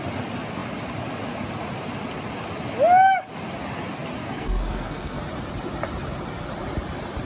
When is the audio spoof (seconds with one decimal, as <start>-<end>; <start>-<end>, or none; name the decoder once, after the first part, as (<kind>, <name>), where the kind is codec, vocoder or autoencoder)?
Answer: 4.2-5.2 (codec, SNAC)